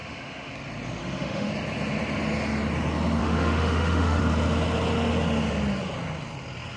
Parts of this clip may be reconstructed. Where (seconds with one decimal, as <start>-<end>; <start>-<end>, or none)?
0.0-0.5; 1.0-1.5; 3.2-4.2